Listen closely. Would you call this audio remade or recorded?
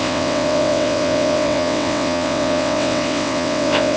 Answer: remade